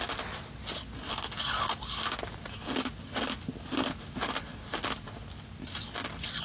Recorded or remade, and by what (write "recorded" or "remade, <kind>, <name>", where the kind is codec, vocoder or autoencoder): recorded